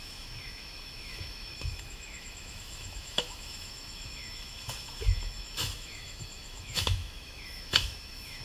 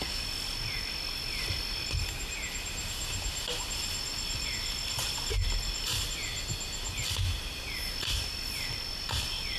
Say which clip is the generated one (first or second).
first